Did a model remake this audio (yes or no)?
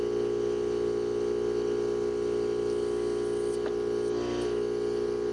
no